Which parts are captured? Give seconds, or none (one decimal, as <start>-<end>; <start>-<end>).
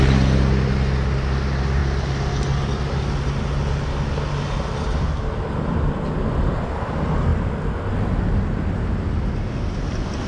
0.0-10.3